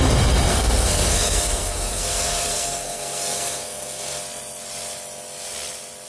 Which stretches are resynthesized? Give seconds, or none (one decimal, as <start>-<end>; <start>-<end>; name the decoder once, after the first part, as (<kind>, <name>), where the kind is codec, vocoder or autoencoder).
0.5-4.2 (codec, SNAC)